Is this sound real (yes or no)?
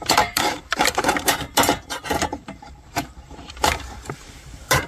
no